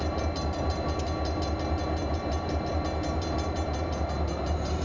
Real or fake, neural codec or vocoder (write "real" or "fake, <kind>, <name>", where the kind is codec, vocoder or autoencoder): real